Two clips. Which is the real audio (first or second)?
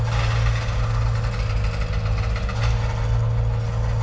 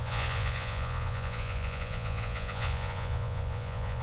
first